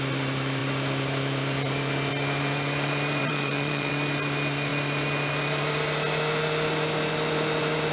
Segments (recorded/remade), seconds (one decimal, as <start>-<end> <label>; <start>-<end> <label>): 0.0-3.2 recorded; 3.2-3.9 remade; 3.9-7.9 recorded